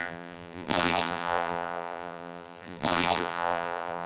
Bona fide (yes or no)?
no